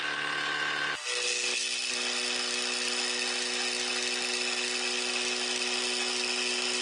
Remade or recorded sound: recorded